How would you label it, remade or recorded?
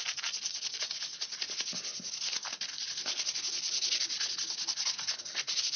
recorded